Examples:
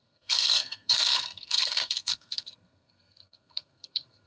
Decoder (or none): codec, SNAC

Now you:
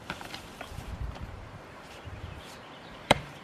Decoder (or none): vocoder, BigVGAN v2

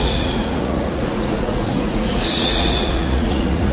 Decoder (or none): vocoder, Vocos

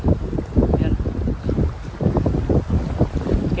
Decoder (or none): none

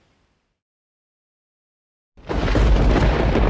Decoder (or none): none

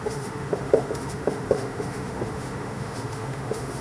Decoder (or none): autoencoder, DAC-VAE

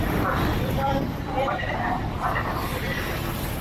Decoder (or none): vocoder, BigVGAN v2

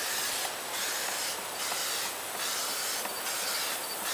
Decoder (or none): none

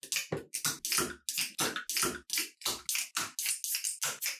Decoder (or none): none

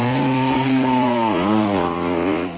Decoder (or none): vocoder, Vocos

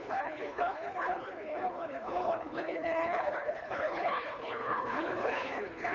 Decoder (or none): codec, HILCodec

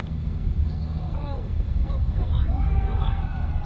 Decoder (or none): codec, SNAC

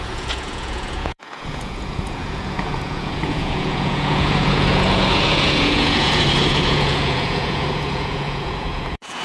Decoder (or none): vocoder, Vocos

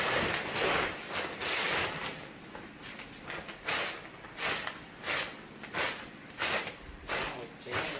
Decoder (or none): none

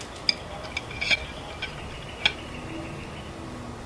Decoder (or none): none